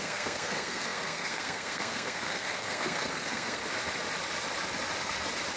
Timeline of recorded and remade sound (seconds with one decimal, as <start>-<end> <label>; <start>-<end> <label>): 0.0-3.6 remade; 3.6-5.6 recorded